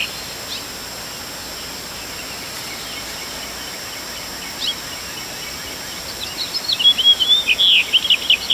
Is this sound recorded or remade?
recorded